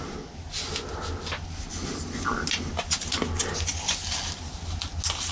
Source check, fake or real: real